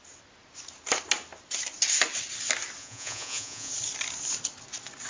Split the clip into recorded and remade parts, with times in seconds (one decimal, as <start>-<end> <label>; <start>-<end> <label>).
0.0-2.8 recorded; 2.8-3.7 remade; 3.7-5.1 recorded